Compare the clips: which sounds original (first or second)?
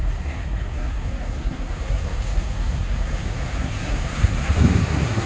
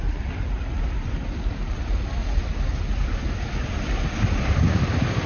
second